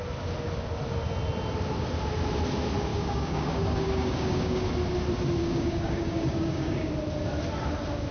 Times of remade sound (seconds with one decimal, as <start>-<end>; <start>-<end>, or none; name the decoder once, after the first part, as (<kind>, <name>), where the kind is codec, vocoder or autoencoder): 2.9-4.7 (codec, DAC); 5.4-6.9